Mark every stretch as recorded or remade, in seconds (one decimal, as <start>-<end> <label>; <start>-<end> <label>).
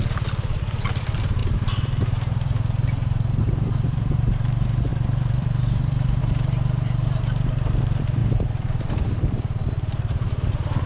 0.0-10.9 remade